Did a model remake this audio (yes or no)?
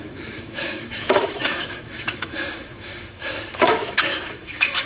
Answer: yes